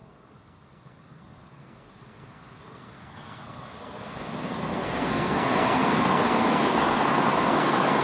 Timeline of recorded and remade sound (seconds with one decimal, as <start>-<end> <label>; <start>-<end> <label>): 0.0-8.0 remade